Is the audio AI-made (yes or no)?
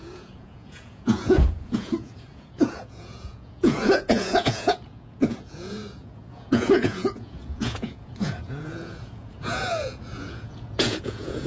yes